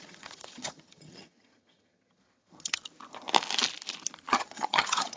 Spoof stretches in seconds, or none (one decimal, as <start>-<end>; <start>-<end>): 0.0-2.8; 4.3-5.2